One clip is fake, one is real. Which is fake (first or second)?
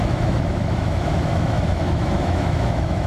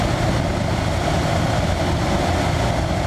first